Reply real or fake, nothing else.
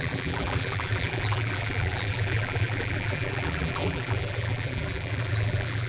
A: fake